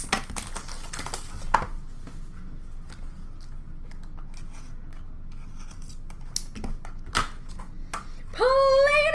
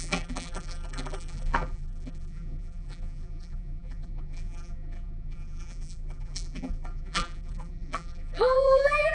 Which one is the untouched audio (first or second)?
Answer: first